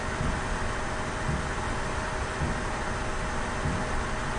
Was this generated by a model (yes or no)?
no